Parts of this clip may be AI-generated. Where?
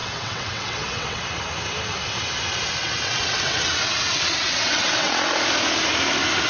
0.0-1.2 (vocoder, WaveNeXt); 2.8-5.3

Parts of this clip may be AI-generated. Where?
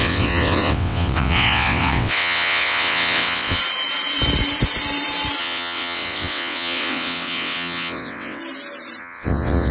0.0-3.6 (vocoder, WaveNeXt); 5.4-8.4; 9.0-9.7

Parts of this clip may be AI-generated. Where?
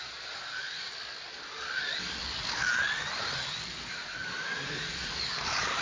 none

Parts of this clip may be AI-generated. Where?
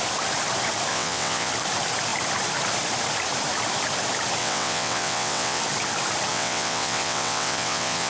0.9-1.5 (vocoder, WaveNeXt); 4.4-5.6; 6.3-8.1